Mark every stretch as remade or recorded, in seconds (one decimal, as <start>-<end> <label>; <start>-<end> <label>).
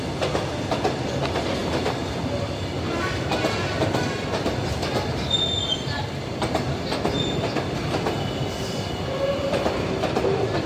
0.0-10.7 recorded